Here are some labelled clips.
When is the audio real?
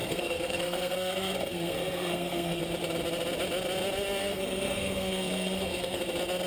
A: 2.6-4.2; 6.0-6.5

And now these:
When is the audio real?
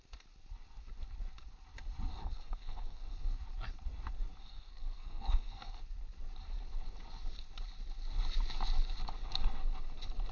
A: 0.0-2.1; 3.3-4.4; 5.8-10.3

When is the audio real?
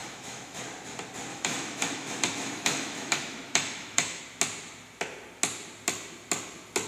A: 0.6-1.3; 4.2-6.9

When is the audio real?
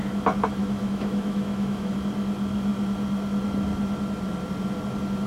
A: 0.0-0.6; 1.9-5.3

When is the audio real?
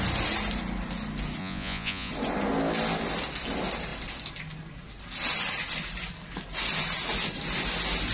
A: 0.0-1.4; 2.1-8.1